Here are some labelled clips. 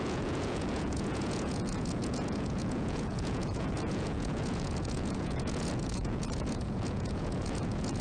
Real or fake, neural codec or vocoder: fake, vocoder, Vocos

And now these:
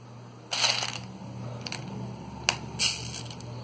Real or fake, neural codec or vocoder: real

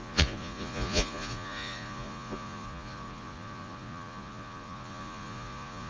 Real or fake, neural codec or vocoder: fake, vocoder, Vocos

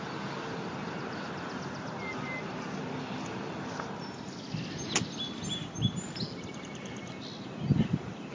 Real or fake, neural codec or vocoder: real